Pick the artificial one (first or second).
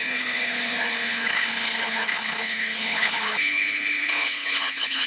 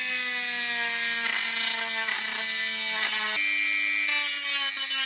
first